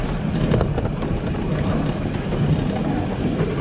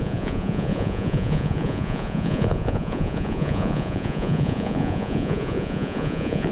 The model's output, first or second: second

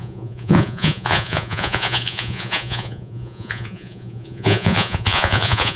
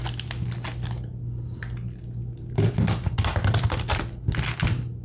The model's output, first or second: first